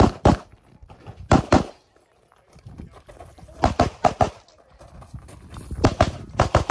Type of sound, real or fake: real